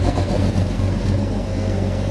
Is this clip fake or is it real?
fake